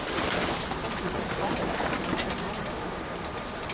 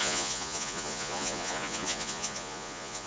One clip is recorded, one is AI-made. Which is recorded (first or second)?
first